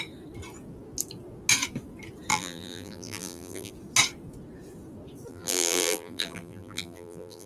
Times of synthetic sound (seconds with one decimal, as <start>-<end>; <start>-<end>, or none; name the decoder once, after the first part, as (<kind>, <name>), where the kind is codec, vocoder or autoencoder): 2.3-3.7 (vocoder, BigVGAN v2); 5.3-7.5